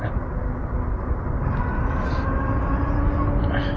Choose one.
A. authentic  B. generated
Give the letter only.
A